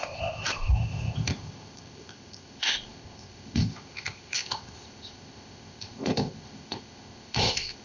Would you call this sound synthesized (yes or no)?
yes